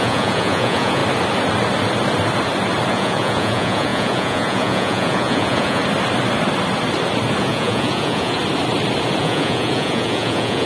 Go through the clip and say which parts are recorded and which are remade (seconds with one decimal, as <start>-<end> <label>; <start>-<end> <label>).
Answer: 0.0-1.0 remade; 1.0-2.9 recorded; 2.9-5.8 remade; 5.8-7.4 recorded; 7.4-8.4 remade; 8.4-9.2 recorded; 9.2-10.7 remade